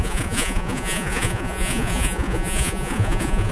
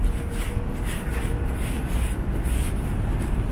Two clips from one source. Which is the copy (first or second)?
first